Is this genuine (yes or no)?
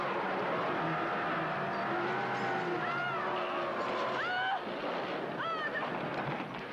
yes